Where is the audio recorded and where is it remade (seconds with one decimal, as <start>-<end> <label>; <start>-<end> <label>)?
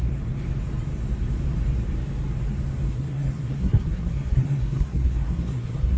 0.0-2.9 recorded; 2.9-6.0 remade